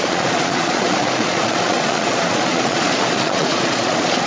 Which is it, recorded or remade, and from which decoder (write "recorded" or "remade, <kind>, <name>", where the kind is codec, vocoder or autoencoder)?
remade, vocoder, Vocos